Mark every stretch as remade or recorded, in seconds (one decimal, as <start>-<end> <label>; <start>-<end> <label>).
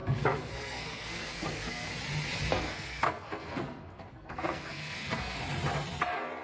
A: 0.0-1.9 remade; 1.9-2.5 recorded; 2.5-5.4 remade; 5.4-6.4 recorded